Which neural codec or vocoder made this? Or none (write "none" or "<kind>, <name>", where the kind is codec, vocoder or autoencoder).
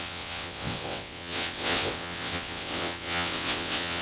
vocoder, WaveNeXt